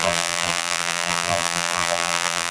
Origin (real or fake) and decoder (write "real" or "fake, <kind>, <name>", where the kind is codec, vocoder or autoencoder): fake, vocoder, BigVGAN v2